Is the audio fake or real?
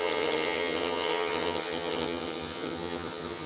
fake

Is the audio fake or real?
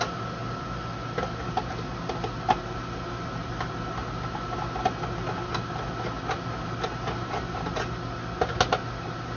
real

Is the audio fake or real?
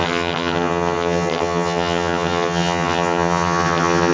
fake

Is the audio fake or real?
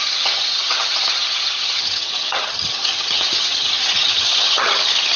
fake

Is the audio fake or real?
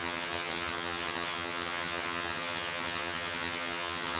fake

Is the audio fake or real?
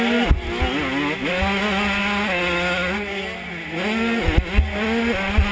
real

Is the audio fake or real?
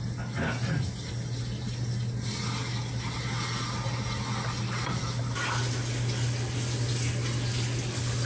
real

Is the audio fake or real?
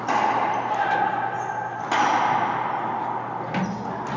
real